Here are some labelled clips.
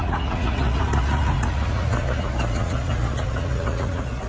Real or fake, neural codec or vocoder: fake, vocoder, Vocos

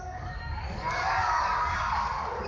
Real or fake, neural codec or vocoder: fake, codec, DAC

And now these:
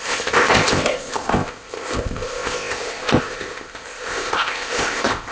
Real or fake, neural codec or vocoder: fake, codec, ZipCodec